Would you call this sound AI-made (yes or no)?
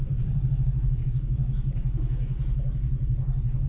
yes